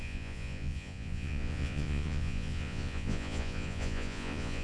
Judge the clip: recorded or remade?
remade